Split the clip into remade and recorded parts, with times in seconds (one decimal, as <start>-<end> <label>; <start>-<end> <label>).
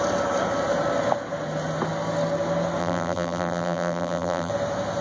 0.0-2.8 recorded; 2.8-4.5 remade; 4.5-5.0 recorded